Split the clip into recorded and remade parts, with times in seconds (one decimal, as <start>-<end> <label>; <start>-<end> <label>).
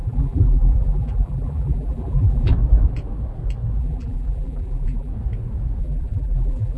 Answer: 0.0-2.5 remade; 2.5-3.8 recorded; 3.8-5.1 remade; 5.1-5.8 recorded; 5.8-6.8 remade